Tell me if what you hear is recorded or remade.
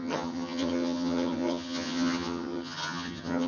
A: remade